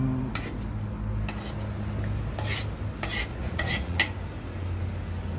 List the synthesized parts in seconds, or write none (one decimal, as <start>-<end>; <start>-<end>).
3.3-4.0